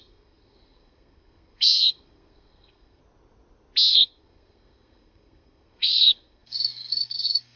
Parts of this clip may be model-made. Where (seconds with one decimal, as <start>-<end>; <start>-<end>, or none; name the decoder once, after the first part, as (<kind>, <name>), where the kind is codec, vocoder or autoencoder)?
0.0-3.0 (codec, SNAC); 3.9-7.6